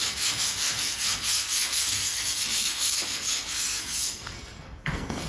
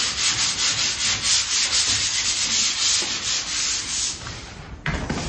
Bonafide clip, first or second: second